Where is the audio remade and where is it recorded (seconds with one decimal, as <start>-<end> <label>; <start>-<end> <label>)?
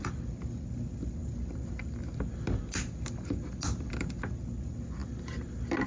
0.0-5.9 recorded